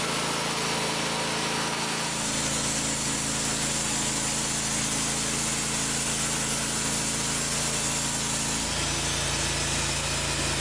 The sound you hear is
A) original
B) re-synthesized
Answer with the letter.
A